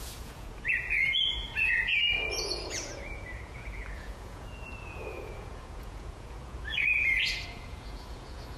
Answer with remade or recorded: remade